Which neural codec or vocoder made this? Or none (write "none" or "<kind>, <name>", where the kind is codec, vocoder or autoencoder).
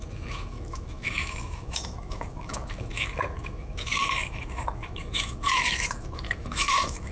autoencoder, DAC-VAE